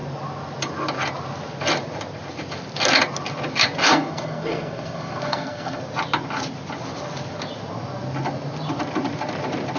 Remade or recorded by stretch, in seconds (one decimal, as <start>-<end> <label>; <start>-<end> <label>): 0.0-3.8 recorded; 3.8-5.8 remade; 5.8-9.8 recorded

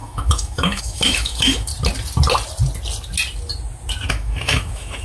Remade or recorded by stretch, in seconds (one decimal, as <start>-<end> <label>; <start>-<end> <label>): 0.0-1.7 remade; 1.7-4.1 recorded; 4.1-5.0 remade